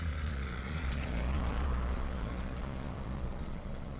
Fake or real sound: fake